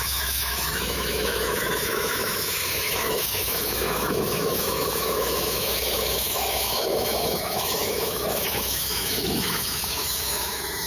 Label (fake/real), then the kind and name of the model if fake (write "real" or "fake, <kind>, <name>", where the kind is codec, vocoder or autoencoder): fake, autoencoder, DAC-VAE